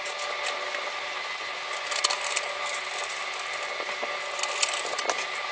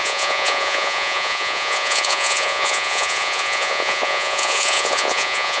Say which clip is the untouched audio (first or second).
first